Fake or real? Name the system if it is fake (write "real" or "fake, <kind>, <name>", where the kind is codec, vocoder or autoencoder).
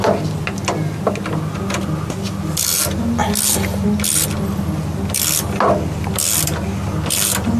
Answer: real